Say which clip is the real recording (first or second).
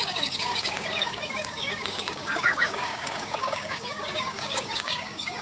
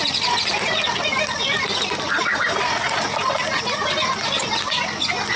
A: second